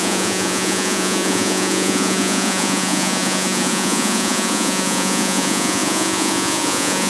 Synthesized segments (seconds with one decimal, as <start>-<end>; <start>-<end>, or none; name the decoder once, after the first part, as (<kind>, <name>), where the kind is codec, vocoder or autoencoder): 0.0-7.1 (vocoder, Vocos)